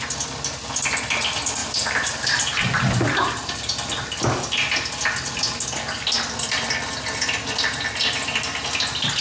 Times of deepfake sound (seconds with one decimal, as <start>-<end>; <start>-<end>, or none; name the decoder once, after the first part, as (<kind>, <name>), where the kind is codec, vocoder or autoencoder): 1.6-2.4 (vocoder, BigVGAN v2)